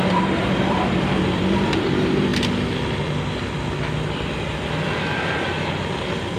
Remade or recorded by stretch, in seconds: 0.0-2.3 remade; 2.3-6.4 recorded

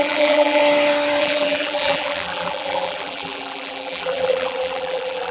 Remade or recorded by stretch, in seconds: 0.0-0.6 remade; 0.6-1.2 recorded; 1.2-5.3 remade

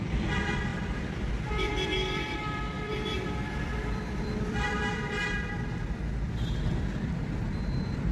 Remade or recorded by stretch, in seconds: 0.0-8.1 remade

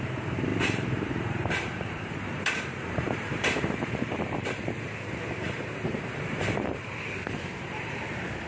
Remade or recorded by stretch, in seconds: 0.0-8.5 remade

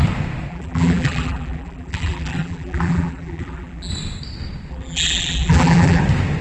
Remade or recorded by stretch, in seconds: 0.0-0.5 recorded; 0.5-3.9 remade; 3.9-4.7 recorded; 4.7-6.0 remade; 6.0-6.4 recorded

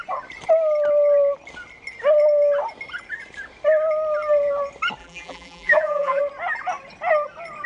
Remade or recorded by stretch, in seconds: 0.0-5.0 recorded; 5.0-6.2 remade; 6.2-7.7 recorded